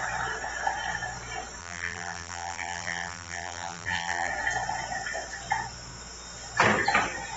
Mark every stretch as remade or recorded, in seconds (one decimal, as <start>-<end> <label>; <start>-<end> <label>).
0.0-1.6 recorded; 1.6-4.3 remade; 4.3-7.4 recorded